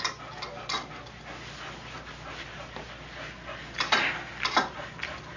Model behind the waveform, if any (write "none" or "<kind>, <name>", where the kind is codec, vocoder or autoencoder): none